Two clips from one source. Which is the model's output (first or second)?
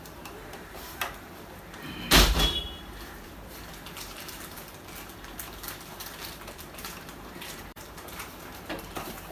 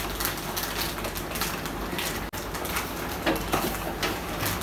first